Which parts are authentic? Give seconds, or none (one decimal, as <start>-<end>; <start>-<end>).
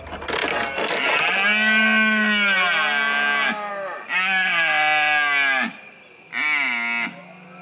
0.0-7.6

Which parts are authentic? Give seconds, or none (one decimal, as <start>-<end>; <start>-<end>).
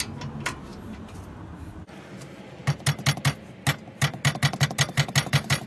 0.0-5.7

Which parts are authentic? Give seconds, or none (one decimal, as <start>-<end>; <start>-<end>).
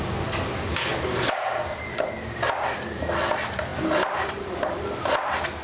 0.0-5.6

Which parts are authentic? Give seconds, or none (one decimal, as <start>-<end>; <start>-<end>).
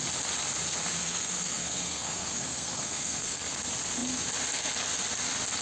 0.0-1.0; 3.5-5.6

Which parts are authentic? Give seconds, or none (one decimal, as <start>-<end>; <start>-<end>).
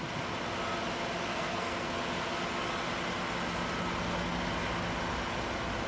0.0-1.3; 1.9-5.9